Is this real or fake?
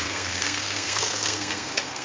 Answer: fake